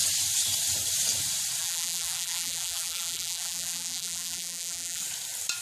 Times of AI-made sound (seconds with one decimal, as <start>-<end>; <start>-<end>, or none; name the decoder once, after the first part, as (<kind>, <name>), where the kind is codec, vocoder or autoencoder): 1.6-5.0 (vocoder, BigVGAN v2)